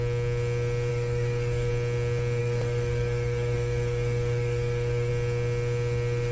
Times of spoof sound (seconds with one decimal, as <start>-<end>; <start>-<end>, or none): 0.9-1.7; 2.4-5.1

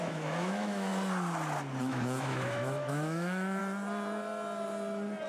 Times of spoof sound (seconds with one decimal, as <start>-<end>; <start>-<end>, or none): 0.0-0.9; 1.8-3.6

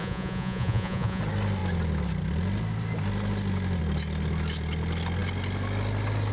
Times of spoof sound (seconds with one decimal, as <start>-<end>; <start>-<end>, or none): 0.0-1.2

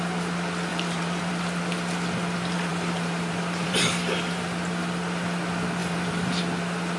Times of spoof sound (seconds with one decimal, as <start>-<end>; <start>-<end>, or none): 0.7-1.3; 2.7-3.8; 5.8-6.4

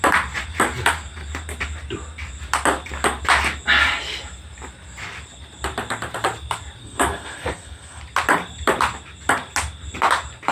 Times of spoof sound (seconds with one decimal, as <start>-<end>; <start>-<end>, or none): 6.8-8.0

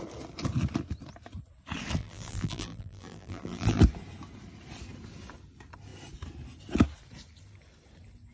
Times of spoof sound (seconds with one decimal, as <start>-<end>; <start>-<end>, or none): 2.0-3.8

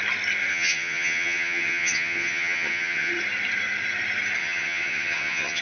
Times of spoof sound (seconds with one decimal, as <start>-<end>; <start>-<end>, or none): 0.5-3.1; 4.4-5.6

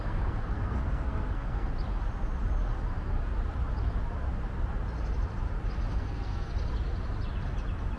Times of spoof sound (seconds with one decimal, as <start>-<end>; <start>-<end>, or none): 0.0-1.7; 5.9-6.5